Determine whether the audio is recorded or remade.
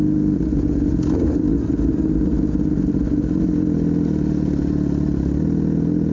recorded